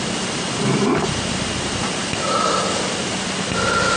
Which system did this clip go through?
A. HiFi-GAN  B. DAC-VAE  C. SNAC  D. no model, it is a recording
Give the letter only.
D